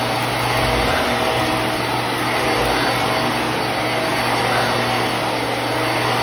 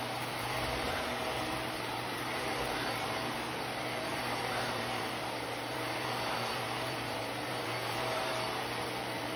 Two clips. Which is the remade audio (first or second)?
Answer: second